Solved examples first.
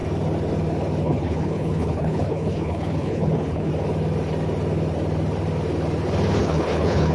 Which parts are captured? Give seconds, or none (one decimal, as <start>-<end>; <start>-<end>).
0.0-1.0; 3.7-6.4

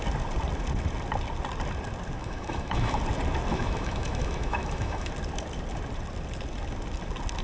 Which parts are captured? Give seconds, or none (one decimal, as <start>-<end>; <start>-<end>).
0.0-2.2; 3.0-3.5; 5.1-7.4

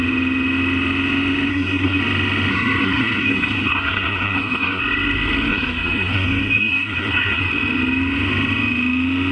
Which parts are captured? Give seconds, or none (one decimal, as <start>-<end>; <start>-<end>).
0.0-1.5; 2.0-2.5; 4.8-5.5; 7.4-9.3